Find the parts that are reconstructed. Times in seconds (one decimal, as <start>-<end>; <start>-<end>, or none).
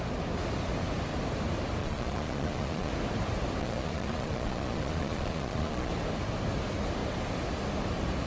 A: 1.8-2.9; 3.6-5.9